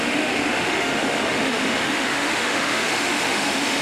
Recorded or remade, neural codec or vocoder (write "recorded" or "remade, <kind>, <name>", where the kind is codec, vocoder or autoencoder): remade, autoencoder, DAC-VAE